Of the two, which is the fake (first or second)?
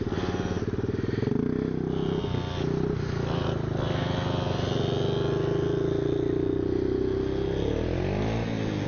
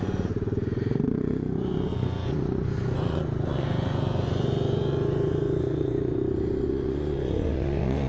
second